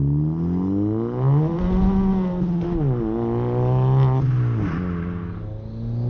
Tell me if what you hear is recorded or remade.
recorded